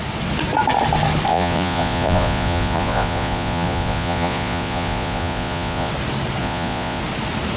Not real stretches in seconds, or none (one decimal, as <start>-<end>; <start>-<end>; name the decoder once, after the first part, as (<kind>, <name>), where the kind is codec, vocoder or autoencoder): 1.3-5.9 (vocoder, Vocos); 6.4-7.0